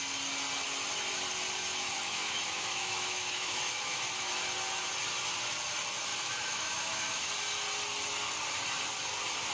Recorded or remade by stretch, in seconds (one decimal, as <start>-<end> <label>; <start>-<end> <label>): 0.0-1.7 recorded; 1.7-4.3 remade; 4.3-6.1 recorded; 6.1-7.3 remade; 7.3-9.5 recorded